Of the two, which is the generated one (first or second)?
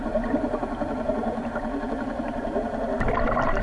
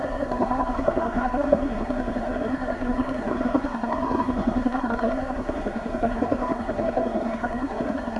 second